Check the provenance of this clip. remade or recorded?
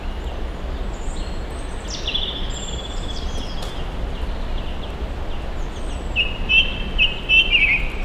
recorded